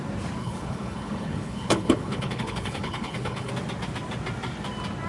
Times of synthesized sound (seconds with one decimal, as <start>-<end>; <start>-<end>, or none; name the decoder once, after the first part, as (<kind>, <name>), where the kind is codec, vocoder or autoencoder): 0.4-3.5 (codec, HILCodec)